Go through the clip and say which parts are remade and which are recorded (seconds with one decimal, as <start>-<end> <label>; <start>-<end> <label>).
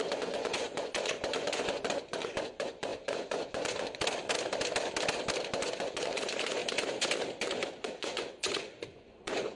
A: 0.0-4.0 remade; 4.0-5.4 recorded; 5.4-6.6 remade; 6.6-7.4 recorded; 7.4-9.6 remade